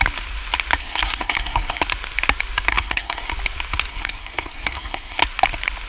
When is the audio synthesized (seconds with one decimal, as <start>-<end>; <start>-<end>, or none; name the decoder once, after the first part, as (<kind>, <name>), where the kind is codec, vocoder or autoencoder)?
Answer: 0.8-1.8 (codec, SNAC); 2.7-3.3; 3.9-5.2

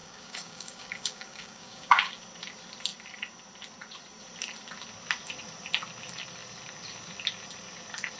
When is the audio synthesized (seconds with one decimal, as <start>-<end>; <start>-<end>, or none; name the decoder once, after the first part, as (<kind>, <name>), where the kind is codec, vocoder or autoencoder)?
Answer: 0.0-2.2 (codec, DAC)

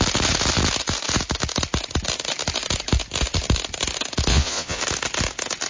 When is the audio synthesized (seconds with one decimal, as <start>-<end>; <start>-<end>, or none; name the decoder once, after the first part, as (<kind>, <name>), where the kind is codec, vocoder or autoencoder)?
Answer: 4.3-4.8 (vocoder, Vocos)

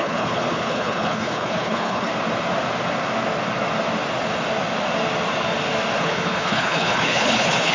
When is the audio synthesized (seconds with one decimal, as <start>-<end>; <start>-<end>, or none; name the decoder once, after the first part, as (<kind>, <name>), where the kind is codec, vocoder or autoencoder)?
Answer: 0.0-2.1 (codec, HILCodec); 6.0-7.7

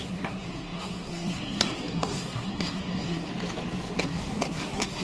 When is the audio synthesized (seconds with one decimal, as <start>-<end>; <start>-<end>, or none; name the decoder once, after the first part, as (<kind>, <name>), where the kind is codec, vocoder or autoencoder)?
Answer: 0.0-3.3 (codec, SNAC); 4.0-5.0

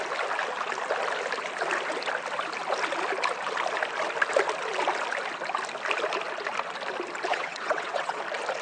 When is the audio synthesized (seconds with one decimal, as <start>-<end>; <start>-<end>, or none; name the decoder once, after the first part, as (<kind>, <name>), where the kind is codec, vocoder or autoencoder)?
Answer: 7.3-8.2 (vocoder, WaveNeXt)

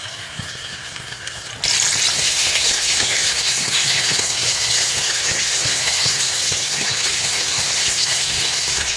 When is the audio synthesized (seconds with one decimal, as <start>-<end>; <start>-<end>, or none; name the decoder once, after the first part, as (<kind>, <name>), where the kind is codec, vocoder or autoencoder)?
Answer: 0.0-1.5 (codec, SNAC); 2.1-9.0